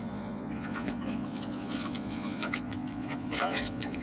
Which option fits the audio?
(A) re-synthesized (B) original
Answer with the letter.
A